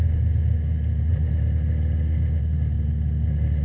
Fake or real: real